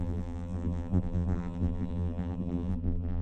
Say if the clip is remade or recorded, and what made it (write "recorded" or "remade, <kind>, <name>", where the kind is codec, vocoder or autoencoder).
remade, vocoder, BigVGAN v2